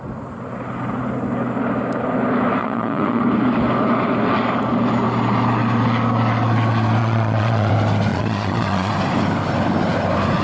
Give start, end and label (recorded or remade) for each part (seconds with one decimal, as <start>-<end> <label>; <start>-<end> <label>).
0.0-2.6 recorded; 2.6-3.2 remade; 3.2-7.0 recorded; 7.0-7.7 remade; 7.7-8.1 recorded; 8.1-8.9 remade; 8.9-10.4 recorded